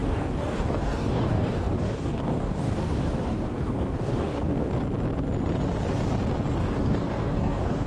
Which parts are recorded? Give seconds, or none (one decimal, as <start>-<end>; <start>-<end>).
4.7-6.6